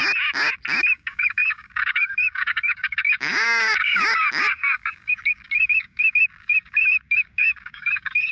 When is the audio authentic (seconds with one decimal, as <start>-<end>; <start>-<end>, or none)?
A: 0.0-0.9